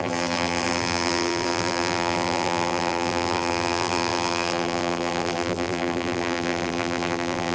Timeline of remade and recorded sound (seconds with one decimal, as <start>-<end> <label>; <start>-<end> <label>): 0.0-7.5 remade